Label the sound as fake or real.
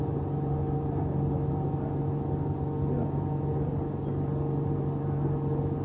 real